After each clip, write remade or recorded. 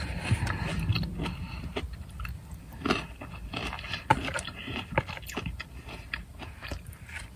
recorded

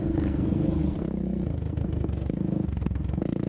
remade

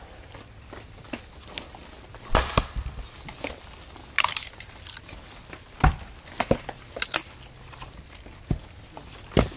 recorded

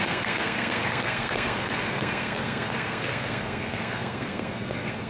remade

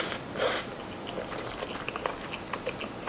recorded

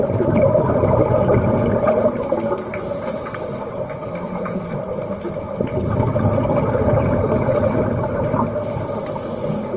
recorded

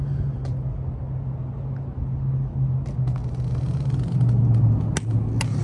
recorded